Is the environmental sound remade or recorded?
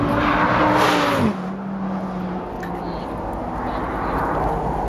recorded